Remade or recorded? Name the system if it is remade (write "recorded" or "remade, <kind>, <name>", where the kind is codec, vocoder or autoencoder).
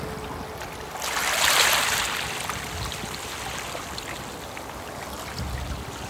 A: recorded